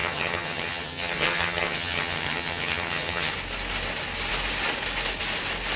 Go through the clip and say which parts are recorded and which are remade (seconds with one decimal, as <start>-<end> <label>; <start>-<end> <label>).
0.0-3.3 remade; 3.3-5.8 recorded